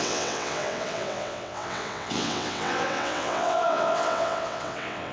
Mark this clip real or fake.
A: fake